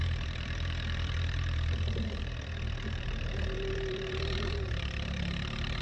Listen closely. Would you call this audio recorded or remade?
remade